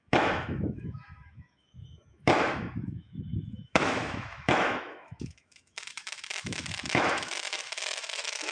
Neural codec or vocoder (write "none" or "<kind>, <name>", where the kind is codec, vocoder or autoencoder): autoencoder, DAC-VAE